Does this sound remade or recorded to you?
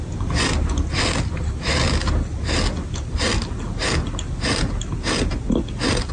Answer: recorded